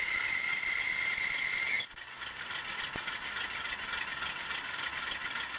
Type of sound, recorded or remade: recorded